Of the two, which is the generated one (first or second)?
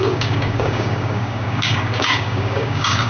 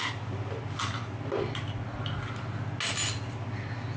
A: first